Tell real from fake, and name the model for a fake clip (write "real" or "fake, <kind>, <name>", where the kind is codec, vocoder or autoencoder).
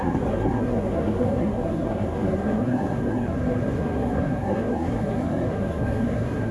fake, codec, SNAC